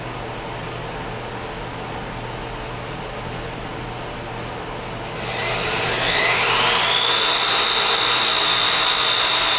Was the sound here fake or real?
real